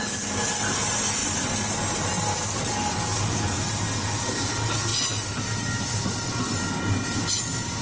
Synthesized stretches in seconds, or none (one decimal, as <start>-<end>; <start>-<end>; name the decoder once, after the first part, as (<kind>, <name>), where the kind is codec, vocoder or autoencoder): none